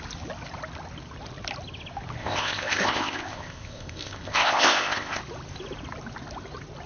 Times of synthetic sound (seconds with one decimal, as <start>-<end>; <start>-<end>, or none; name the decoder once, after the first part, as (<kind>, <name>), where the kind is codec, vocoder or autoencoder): 2.2-5.2 (codec, ZipCodec)